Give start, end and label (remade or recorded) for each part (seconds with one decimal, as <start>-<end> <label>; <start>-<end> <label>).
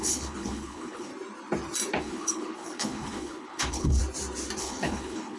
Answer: 0.0-1.1 remade; 1.1-2.0 recorded; 2.0-4.0 remade; 4.0-4.6 recorded; 4.6-5.4 remade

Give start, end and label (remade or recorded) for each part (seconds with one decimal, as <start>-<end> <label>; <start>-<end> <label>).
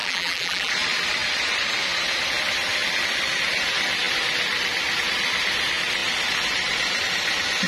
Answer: 0.0-0.7 remade; 0.7-7.7 recorded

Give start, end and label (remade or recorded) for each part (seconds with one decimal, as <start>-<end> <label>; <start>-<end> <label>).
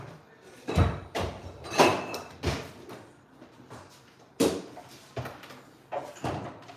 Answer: 0.0-6.8 recorded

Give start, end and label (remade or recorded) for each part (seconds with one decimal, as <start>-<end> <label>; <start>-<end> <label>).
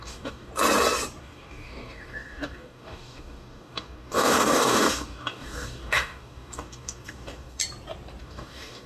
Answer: 0.0-0.5 remade; 0.5-1.2 recorded; 1.2-7.6 remade; 7.6-8.2 recorded; 8.2-8.9 remade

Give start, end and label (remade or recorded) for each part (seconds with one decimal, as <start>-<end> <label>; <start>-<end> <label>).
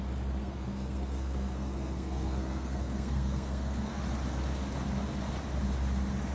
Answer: 0.0-0.4 recorded; 0.4-4.0 remade; 4.0-6.3 recorded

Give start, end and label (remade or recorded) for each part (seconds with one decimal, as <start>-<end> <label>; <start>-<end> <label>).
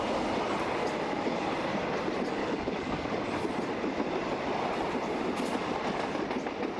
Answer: 0.0-2.4 recorded; 2.4-3.1 remade; 3.1-6.8 recorded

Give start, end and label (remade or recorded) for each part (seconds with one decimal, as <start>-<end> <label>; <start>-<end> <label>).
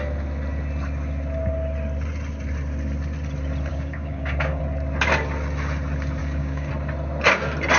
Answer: 0.0-3.7 recorded; 3.7-4.6 remade; 4.6-6.2 recorded; 6.2-6.7 remade; 6.7-7.8 recorded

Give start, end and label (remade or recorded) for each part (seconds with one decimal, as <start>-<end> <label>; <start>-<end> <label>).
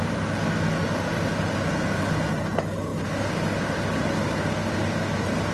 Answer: 0.0-5.5 recorded